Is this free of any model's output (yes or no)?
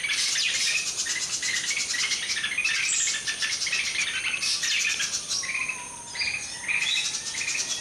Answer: yes